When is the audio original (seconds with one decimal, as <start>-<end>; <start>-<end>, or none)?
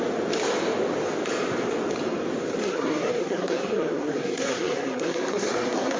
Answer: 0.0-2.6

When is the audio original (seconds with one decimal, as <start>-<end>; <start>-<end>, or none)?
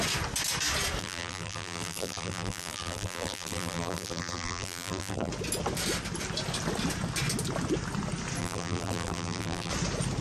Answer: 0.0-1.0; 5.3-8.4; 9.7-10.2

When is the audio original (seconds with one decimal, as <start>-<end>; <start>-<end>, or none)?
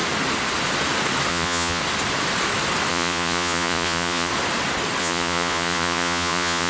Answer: 0.0-1.3; 1.8-2.9; 4.3-5.0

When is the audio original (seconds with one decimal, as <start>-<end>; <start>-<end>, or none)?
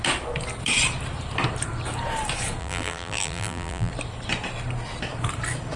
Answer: 0.0-2.6; 3.9-5.8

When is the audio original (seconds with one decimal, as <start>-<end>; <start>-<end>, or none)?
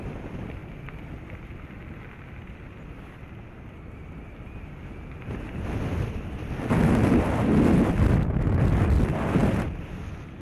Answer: 0.0-10.4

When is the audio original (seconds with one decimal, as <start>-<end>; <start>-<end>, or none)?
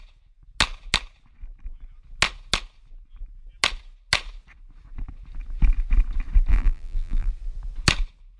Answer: 0.0-6.5; 7.3-8.4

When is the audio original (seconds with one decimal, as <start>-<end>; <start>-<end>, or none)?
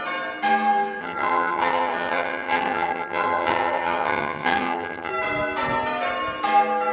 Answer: 0.0-1.0; 5.1-6.9